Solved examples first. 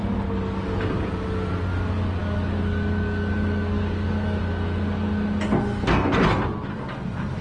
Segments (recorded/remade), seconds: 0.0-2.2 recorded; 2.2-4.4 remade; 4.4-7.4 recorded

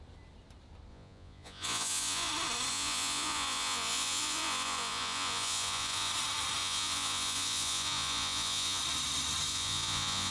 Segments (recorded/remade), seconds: 0.0-0.9 recorded; 0.9-2.3 remade; 2.3-2.7 recorded; 2.7-6.1 remade; 6.1-6.6 recorded; 6.6-8.8 remade; 8.8-9.5 recorded; 9.5-10.3 remade

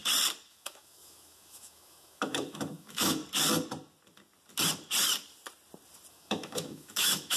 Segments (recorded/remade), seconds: 0.0-0.5 recorded; 0.5-3.2 remade; 3.2-6.1 recorded; 6.1-7.4 remade

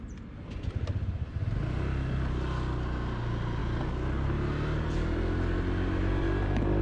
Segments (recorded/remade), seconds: 0.0-6.8 recorded

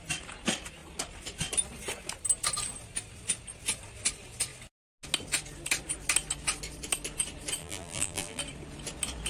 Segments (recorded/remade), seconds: 0.0-7.6 recorded; 7.6-8.4 remade; 8.4-9.3 recorded

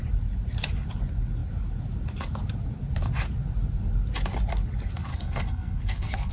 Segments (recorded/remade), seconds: 0.0-5.1 recorded; 5.1-6.3 remade

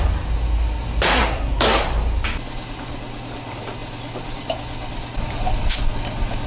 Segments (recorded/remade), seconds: 0.0-1.1 recorded; 1.1-1.8 remade; 1.8-6.5 recorded